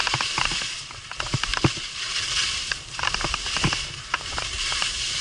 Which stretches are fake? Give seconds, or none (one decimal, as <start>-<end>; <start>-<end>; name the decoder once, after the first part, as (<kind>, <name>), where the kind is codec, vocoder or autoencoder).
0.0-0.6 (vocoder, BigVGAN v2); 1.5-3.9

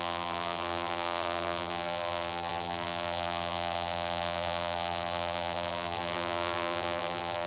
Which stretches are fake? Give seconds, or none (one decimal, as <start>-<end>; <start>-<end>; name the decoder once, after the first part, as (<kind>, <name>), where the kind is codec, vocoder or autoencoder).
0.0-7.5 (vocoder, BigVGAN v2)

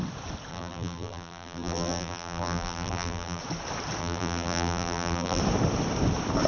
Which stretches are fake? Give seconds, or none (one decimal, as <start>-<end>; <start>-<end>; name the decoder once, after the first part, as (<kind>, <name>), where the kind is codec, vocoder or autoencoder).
0.5-3.4 (vocoder, BigVGAN v2); 4.0-5.4